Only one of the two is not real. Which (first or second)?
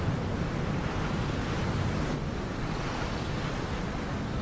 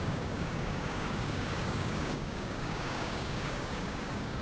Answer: second